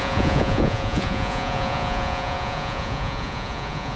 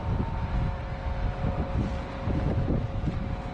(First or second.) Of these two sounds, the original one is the second